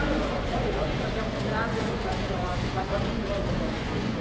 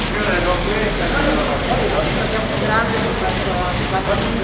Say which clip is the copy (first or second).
first